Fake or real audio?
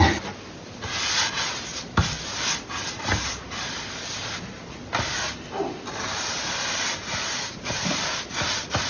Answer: real